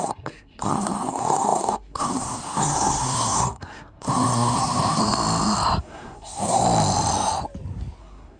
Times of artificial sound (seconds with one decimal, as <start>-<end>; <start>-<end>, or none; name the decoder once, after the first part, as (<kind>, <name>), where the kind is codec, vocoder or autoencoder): 0.0-5.0 (codec, SNAC); 5.8-6.6; 8.0-8.4